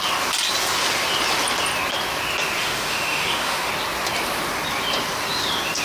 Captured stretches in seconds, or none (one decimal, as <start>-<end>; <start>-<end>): 0.0-2.6; 3.7-5.8